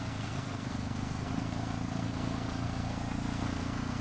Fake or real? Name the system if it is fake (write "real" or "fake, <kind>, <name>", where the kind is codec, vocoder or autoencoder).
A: fake, codec, SNAC